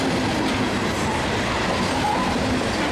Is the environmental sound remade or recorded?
recorded